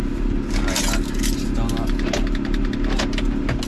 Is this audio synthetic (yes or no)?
no